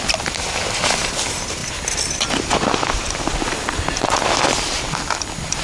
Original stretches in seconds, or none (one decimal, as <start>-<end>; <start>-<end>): 0.0-5.6